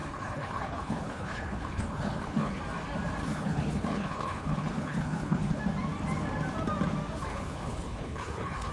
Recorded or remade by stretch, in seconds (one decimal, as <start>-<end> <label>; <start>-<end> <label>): 0.0-2.6 remade; 2.6-3.2 recorded; 3.2-5.6 remade; 5.6-7.3 recorded; 7.3-8.7 remade